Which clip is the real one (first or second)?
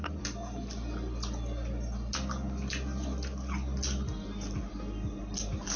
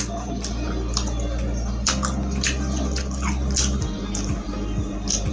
first